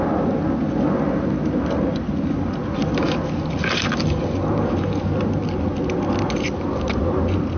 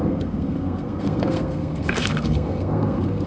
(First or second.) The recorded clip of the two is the first